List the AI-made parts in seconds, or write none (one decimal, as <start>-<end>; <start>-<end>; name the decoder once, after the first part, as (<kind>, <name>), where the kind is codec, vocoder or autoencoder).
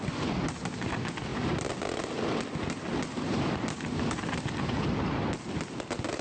none